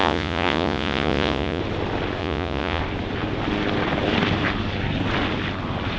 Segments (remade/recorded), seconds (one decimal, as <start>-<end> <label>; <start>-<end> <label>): 0.0-1.6 remade; 1.6-2.2 recorded; 2.2-2.8 remade; 2.8-6.0 recorded